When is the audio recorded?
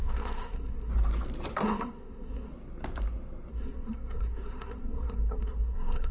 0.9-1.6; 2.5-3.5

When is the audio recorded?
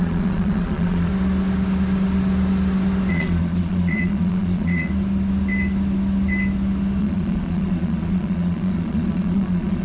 1.1-3.1; 4.9-7.0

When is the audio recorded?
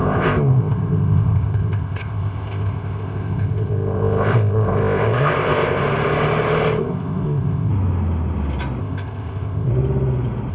5.8-6.8; 7.7-8.8; 9.7-10.5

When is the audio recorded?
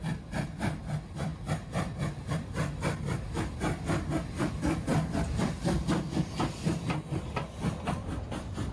0.0-8.7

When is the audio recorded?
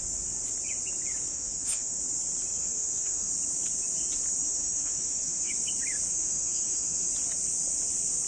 0.0-1.3; 2.0-2.5; 3.3-4.4; 5.5-6.1; 7.1-8.3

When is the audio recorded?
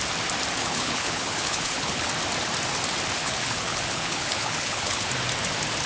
0.0-0.6; 2.1-3.2; 5.1-5.9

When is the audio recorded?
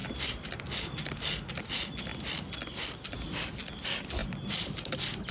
1.6-4.2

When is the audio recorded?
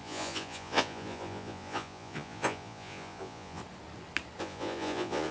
3.6-4.4